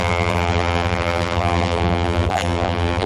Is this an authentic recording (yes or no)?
no